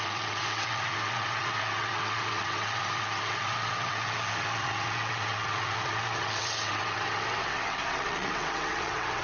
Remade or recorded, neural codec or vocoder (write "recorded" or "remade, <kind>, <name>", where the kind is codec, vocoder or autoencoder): remade, vocoder, WaveNeXt